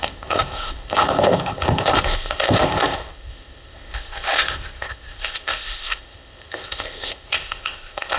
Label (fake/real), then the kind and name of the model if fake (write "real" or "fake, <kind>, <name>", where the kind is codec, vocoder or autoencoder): fake, codec, ZipCodec